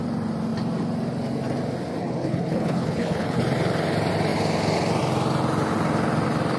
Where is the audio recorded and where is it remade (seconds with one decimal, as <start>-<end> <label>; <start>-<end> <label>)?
0.0-2.0 recorded; 2.0-3.4 remade; 3.4-6.6 recorded